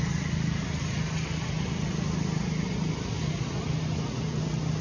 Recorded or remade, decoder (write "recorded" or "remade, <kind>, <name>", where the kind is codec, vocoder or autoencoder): recorded